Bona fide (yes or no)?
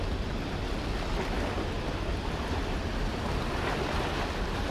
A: yes